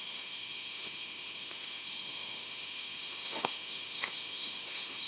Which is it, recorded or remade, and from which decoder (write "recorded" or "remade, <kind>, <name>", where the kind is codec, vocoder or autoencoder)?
remade, autoencoder, DAC-VAE